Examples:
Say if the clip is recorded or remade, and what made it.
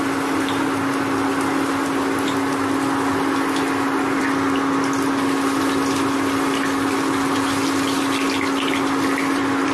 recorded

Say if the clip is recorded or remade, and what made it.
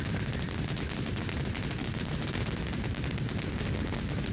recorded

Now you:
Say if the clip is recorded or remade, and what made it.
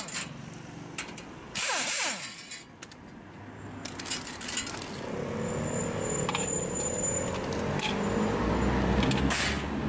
recorded